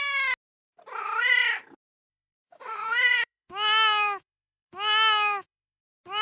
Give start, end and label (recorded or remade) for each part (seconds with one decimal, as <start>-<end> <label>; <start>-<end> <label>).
0.0-2.1 recorded; 2.1-5.8 remade; 5.8-6.2 recorded